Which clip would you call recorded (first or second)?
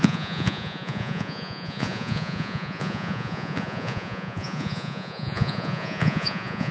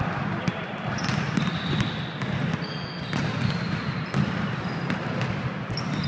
second